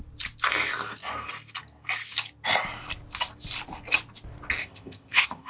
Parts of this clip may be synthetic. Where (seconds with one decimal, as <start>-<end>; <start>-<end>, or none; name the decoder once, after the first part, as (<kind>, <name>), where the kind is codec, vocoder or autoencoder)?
4.6-5.5 (codec, ZipCodec)